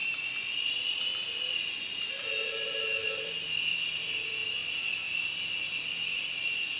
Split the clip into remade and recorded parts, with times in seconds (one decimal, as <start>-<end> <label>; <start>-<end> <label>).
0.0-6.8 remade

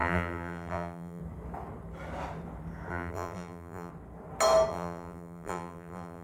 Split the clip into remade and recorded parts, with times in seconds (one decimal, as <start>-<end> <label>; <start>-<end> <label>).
0.0-1.2 remade; 1.2-2.9 recorded; 2.9-3.9 remade; 3.9-4.7 recorded; 4.7-6.2 remade

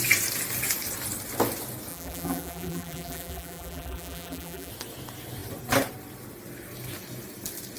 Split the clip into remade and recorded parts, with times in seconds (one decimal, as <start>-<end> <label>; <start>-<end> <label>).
0.0-1.9 recorded; 1.9-4.7 remade; 4.7-7.8 recorded

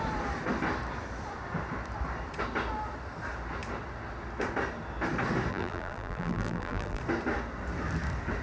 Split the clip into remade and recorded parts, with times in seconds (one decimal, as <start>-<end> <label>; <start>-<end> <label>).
0.0-5.5 recorded; 5.5-7.0 remade; 7.0-8.4 recorded